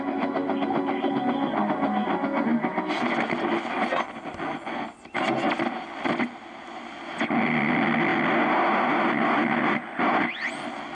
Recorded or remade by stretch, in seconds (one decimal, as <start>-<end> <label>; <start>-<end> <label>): 0.0-10.9 recorded